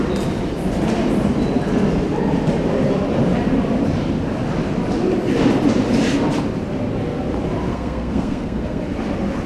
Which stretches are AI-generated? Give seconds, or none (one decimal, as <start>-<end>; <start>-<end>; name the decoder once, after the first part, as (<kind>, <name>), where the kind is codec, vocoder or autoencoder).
7.7-8.8 (codec, SNAC)